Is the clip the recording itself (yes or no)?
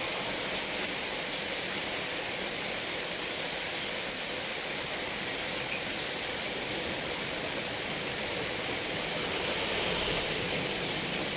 no